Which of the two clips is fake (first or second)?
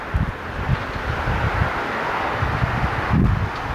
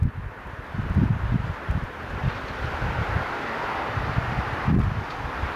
second